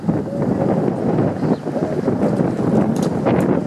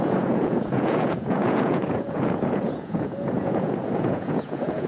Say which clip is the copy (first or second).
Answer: second